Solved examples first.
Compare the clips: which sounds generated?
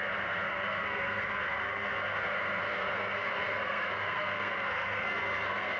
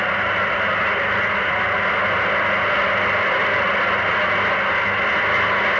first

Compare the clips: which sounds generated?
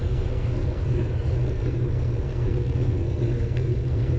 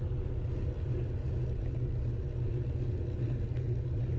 first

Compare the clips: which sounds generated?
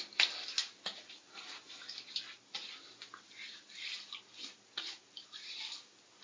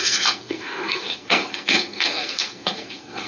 second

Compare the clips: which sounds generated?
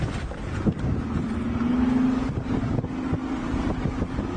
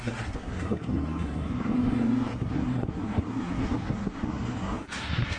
second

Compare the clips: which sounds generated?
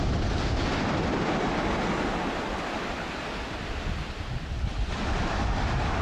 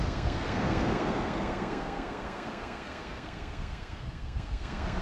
second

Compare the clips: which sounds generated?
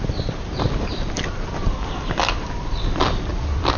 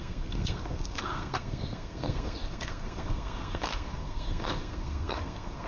second